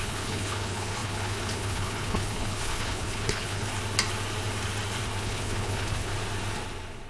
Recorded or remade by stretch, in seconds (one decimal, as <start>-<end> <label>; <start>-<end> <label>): 0.0-3.7 remade; 3.7-5.2 recorded; 5.2-6.1 remade; 6.1-7.1 recorded